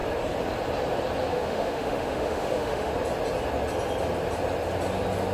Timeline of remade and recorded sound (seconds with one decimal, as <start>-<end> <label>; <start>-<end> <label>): 0.0-1.3 recorded; 1.3-2.9 remade; 2.9-5.3 recorded